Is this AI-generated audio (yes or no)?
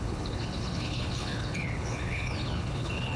yes